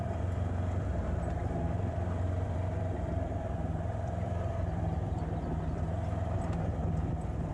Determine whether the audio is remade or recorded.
remade